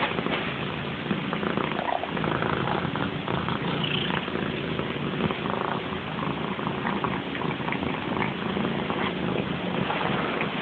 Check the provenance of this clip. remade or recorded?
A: recorded